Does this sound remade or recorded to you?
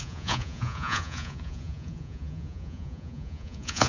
remade